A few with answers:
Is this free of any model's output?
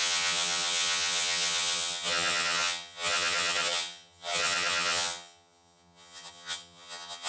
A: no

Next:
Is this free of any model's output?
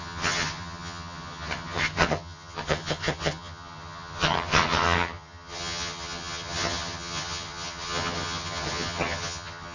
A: no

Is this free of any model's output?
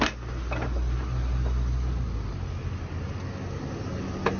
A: yes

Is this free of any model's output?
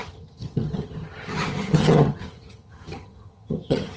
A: no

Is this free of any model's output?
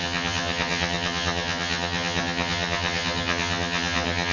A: no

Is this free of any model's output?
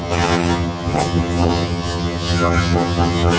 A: no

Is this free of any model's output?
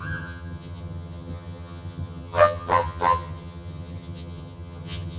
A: no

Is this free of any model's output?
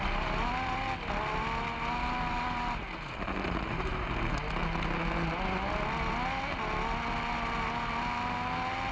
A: yes